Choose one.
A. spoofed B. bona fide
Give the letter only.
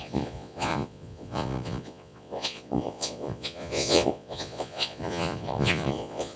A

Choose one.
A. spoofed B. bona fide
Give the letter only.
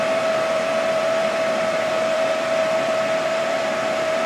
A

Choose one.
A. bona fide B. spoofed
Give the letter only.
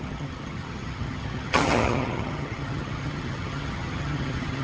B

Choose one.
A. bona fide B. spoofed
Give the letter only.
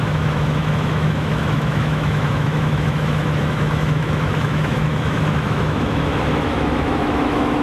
B